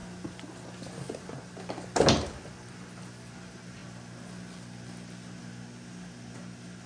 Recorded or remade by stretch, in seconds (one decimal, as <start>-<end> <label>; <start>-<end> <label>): 0.0-6.9 recorded